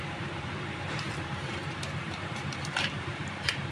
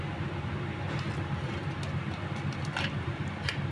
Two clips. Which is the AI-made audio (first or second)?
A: first